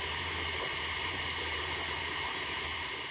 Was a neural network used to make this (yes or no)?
yes